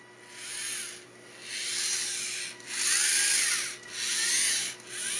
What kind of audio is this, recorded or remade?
recorded